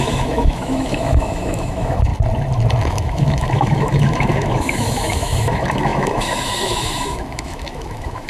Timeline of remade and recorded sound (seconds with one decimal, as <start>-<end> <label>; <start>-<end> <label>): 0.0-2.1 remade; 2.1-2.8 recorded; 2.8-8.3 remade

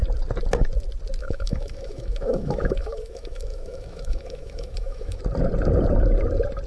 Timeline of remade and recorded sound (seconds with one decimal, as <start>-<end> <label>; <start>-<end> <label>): 0.0-1.2 recorded; 1.2-5.2 remade; 5.2-6.7 recorded

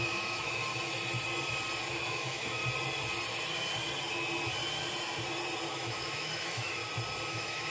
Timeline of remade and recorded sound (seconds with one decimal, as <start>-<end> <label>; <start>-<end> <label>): 0.0-0.6 remade; 0.6-1.9 recorded; 1.9-2.6 remade; 2.6-5.7 recorded; 5.7-6.8 remade; 6.8-7.3 recorded; 7.3-7.7 remade